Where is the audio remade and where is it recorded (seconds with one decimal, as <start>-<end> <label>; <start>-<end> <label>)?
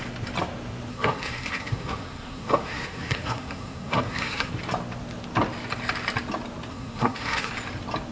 0.0-0.9 recorded; 0.9-4.5 remade; 4.5-6.7 recorded; 6.7-7.5 remade; 7.5-8.1 recorded